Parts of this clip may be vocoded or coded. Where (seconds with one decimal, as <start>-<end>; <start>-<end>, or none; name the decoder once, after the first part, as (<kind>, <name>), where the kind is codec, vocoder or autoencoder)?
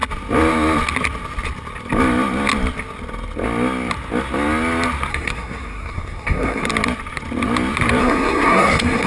5.1-6.7 (codec, SNAC); 8.0-9.1